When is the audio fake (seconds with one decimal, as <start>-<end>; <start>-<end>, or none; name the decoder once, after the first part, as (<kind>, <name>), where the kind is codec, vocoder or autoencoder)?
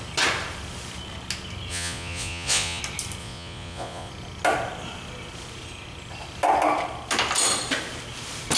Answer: 1.7-2.8 (vocoder, Vocos); 3.2-4.1